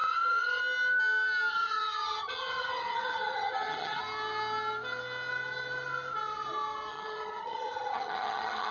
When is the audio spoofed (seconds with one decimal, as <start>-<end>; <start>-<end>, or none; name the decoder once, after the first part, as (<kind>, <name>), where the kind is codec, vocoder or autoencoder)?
0.0-0.6 (vocoder, HiFi-GAN); 1.5-4.0; 6.9-8.7